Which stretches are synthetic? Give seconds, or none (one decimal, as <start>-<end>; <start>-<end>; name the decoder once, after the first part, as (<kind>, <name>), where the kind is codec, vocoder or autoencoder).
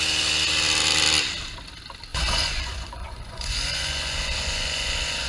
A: 2.1-5.3 (vocoder, Vocos)